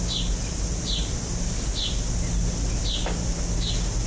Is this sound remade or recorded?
recorded